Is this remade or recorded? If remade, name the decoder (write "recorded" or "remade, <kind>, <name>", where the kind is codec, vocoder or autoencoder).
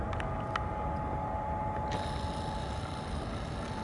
recorded